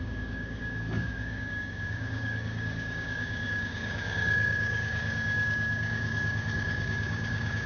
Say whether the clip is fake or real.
fake